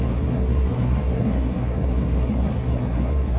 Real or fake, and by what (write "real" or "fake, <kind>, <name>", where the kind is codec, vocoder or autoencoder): fake, codec, SNAC